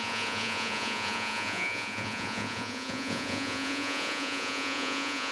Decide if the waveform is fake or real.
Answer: fake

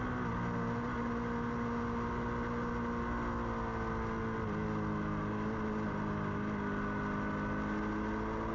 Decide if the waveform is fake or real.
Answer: real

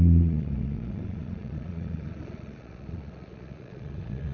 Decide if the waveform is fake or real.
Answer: fake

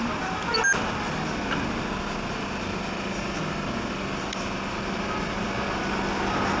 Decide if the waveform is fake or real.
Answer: real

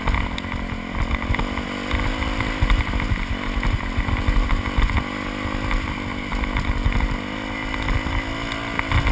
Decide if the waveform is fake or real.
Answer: real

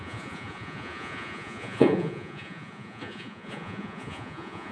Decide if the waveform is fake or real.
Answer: fake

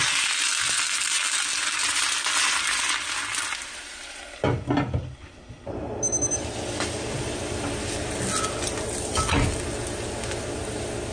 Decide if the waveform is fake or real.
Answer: real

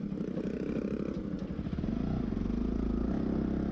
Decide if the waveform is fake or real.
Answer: real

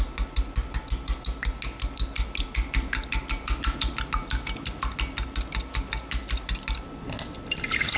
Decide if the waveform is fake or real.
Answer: real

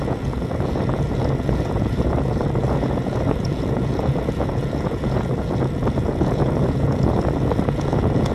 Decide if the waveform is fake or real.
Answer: fake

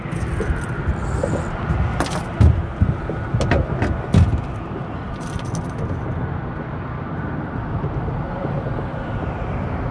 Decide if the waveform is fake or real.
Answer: real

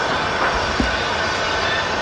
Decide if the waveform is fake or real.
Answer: real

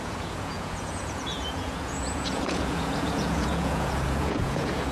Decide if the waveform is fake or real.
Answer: fake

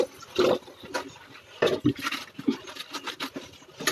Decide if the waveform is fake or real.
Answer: real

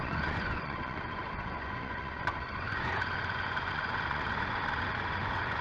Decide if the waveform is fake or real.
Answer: fake